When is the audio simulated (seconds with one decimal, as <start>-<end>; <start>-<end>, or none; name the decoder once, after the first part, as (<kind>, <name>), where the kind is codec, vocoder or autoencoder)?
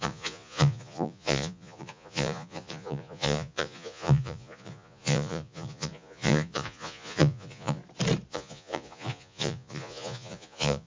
0.0-7.8 (vocoder, Vocos); 8.3-10.9